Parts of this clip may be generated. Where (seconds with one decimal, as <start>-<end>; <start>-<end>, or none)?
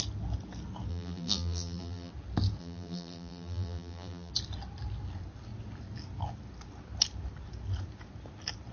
0.9-2.1; 2.6-4.3